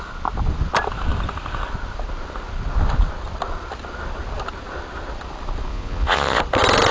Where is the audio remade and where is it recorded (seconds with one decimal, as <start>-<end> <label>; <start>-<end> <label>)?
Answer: 0.0-5.7 recorded; 5.7-6.4 remade; 6.4-6.9 recorded